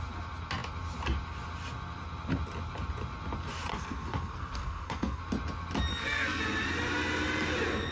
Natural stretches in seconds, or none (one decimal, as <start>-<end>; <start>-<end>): 0.0-3.7; 5.2-5.9; 6.4-7.9

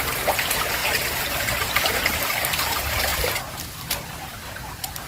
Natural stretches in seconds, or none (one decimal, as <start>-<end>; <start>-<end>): none

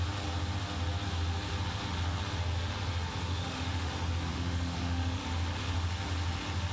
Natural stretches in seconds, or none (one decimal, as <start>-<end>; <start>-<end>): 0.0-3.3; 3.9-4.3; 5.2-6.7